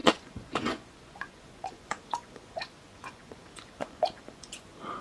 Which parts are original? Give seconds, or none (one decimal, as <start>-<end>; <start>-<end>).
none